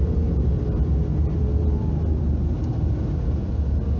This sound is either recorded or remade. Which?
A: recorded